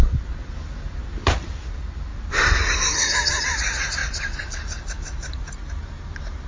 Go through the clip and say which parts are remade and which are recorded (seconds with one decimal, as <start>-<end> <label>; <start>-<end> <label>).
0.0-6.5 recorded